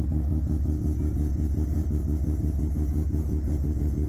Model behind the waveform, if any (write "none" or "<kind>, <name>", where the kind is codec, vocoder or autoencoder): none